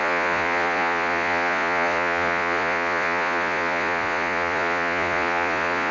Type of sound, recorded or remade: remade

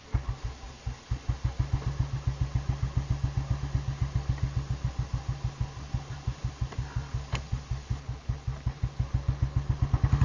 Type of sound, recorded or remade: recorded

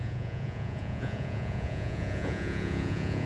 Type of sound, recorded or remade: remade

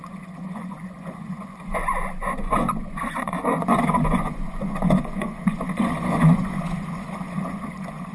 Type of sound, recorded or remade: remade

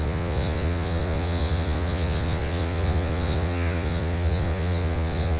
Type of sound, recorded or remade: remade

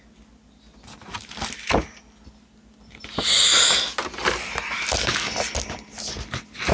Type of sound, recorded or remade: recorded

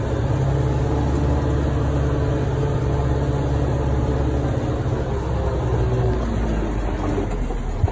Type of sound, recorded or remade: recorded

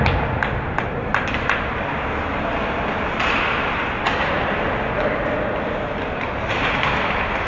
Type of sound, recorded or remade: recorded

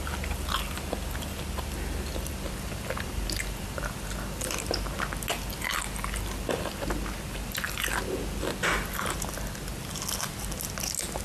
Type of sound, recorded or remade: recorded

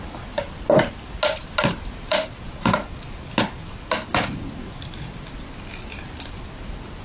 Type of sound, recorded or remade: recorded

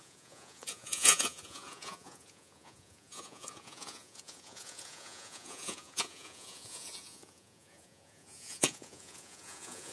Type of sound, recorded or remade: remade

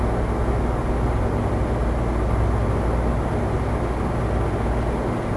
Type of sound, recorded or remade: recorded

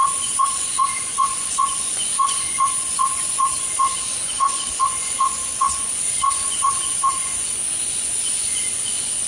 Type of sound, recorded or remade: remade